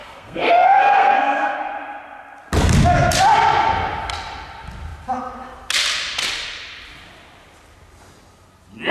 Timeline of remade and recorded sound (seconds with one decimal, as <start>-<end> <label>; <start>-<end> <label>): 0.0-1.6 remade; 1.6-8.9 recorded